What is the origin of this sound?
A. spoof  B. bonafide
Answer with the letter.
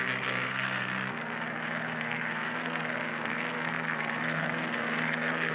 A